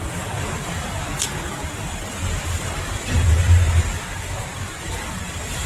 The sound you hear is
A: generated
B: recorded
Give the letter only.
A